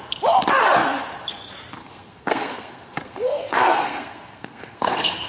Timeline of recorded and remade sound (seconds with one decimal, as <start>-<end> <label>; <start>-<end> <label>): 0.0-1.8 recorded; 1.8-5.3 remade